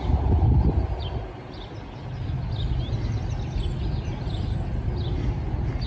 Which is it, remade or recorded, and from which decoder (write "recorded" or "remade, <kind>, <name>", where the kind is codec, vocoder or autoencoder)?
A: recorded